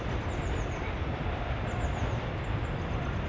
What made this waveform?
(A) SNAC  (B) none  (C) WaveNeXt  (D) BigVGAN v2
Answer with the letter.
D